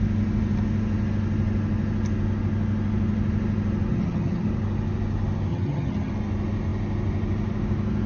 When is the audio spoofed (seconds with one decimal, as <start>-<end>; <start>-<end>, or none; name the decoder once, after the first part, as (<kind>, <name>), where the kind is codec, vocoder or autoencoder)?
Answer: 3.9-4.5 (vocoder, HiFi-GAN); 5.5-6.1